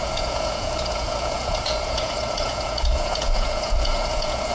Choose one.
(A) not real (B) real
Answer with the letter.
A